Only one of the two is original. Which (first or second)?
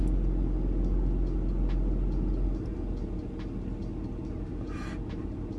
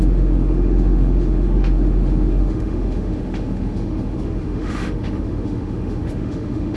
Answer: first